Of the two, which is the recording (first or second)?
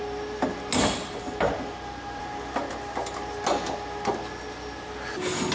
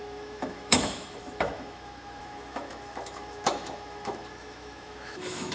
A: first